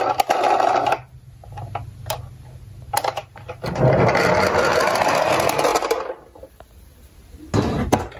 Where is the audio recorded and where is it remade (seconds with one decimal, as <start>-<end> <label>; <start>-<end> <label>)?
0.0-8.2 recorded